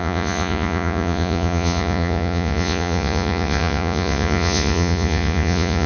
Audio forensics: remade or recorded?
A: remade